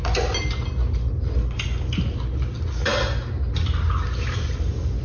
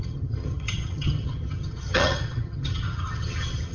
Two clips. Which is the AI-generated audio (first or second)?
second